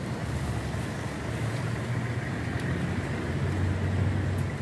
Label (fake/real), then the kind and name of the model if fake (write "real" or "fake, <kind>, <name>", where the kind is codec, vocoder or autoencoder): real